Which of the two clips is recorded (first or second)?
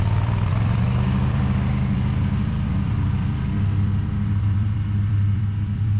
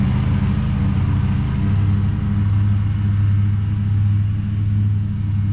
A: second